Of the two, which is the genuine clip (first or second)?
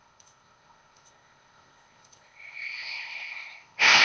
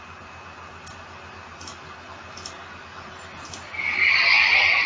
second